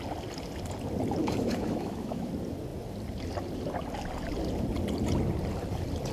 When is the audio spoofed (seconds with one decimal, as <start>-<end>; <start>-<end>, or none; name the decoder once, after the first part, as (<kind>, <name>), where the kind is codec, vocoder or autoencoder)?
1.2-2.3 (autoencoder, DAC-VAE)